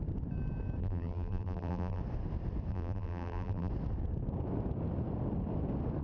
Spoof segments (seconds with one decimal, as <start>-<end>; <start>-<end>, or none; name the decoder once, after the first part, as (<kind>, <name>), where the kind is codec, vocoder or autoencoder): 0.8-2.0 (vocoder, BigVGAN v2); 2.7-3.7